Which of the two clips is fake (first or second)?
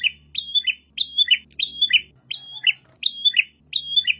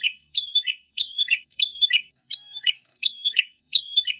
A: second